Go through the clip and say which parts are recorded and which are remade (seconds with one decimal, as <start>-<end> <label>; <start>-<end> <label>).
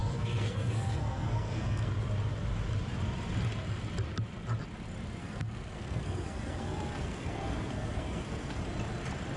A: 0.0-1.9 remade; 1.9-5.2 recorded; 5.2-8.6 remade; 8.6-9.4 recorded